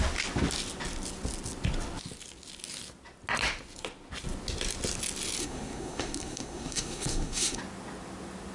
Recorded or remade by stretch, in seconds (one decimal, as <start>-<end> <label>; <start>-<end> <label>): 0.0-5.4 recorded; 5.4-7.6 remade; 7.6-8.5 recorded